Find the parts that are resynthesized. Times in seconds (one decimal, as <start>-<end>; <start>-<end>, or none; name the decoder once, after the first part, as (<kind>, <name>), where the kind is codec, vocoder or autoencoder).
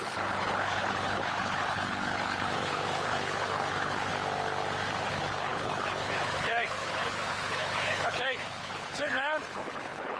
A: 0.0-4.1 (codec, HILCodec); 5.1-10.2